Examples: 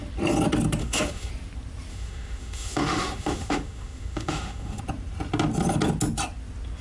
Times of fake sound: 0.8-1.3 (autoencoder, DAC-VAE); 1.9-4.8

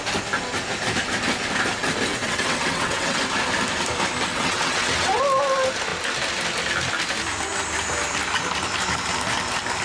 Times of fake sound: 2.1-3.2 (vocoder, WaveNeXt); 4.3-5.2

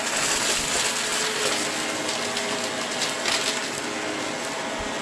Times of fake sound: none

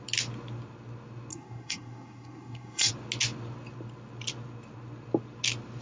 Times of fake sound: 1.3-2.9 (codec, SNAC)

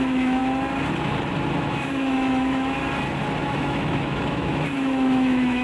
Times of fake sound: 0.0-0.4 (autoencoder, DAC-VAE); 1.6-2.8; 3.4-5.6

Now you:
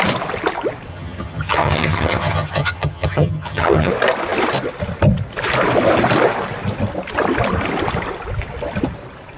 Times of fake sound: 0.9-3.9 (vocoder, HiFi-GAN)